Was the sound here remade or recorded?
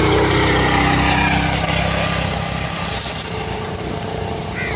recorded